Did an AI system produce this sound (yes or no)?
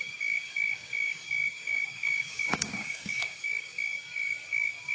yes